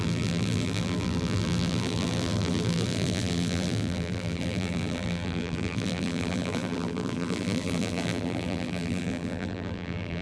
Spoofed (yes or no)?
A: yes